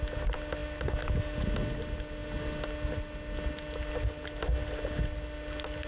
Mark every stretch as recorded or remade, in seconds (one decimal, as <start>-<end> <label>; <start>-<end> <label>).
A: 0.0-5.9 recorded

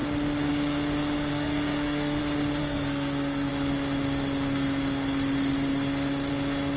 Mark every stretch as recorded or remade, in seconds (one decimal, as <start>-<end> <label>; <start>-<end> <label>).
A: 0.0-1.3 recorded; 1.3-2.2 remade; 2.2-2.6 recorded; 2.6-3.5 remade; 3.5-6.8 recorded

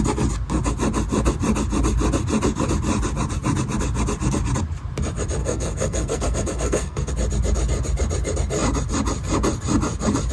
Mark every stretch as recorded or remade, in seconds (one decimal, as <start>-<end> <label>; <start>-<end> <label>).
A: 0.0-5.4 recorded; 5.4-7.1 remade; 7.1-10.3 recorded

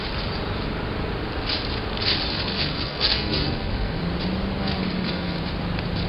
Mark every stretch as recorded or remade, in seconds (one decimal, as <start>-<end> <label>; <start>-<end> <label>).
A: 0.0-2.3 recorded; 2.3-4.0 remade; 4.0-4.6 recorded; 4.6-5.4 remade; 5.4-6.1 recorded

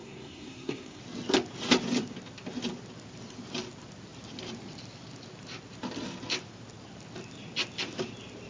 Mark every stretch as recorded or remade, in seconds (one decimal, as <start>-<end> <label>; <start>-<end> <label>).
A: 0.0-1.0 remade; 1.0-8.5 recorded